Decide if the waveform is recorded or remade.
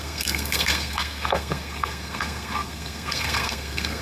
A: remade